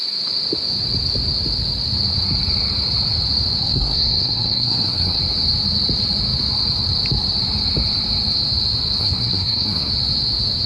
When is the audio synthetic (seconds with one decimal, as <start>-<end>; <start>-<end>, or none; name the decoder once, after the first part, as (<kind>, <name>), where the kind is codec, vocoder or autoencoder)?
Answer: 3.7-5.2 (codec, SNAC); 9.0-9.9